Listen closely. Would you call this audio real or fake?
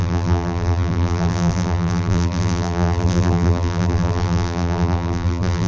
fake